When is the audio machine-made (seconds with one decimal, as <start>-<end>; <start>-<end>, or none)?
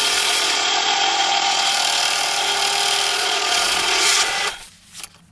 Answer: 0.0-1.7; 3.1-4.7